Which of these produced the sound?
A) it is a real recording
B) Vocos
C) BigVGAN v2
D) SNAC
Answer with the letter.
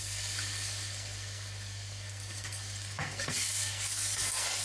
D